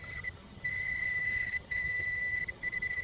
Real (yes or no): no